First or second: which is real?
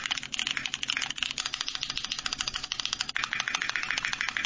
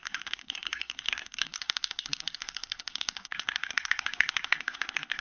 first